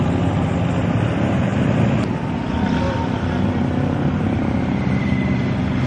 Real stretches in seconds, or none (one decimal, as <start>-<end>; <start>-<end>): 0.0-5.9